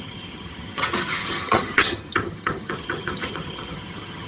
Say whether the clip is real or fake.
fake